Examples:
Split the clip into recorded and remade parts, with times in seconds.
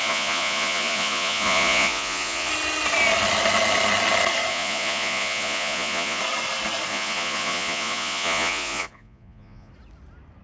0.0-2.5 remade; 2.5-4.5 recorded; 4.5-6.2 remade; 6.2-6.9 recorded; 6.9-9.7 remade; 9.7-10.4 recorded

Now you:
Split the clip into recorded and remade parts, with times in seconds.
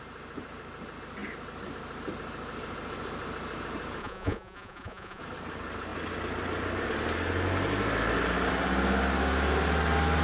0.0-4.0 recorded; 4.0-5.2 remade; 5.2-10.2 recorded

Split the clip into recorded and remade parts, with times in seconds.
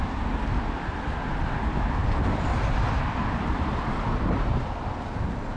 0.0-5.6 recorded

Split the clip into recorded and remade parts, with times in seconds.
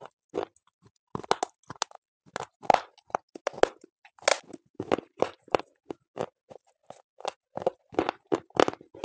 0.0-9.0 recorded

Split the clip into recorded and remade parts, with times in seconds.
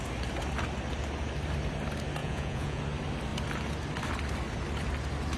0.0-2.2 recorded; 2.2-2.8 remade; 2.8-5.4 recorded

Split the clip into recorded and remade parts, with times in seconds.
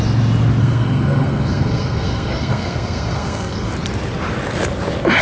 0.0-0.6 recorded; 0.6-3.7 remade; 3.7-5.2 recorded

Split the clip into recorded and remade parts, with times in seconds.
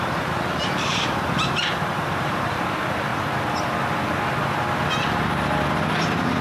0.0-3.1 remade; 3.1-6.0 recorded; 6.0-6.4 remade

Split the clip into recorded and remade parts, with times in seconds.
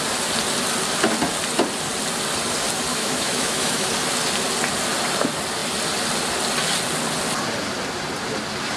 0.0-2.9 recorded; 2.9-3.9 remade; 3.9-8.8 recorded